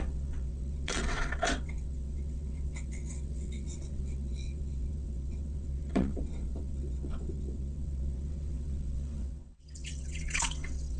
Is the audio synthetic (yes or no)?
yes